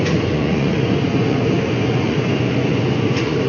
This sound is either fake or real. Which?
fake